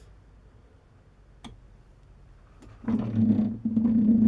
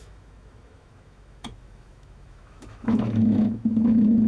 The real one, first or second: first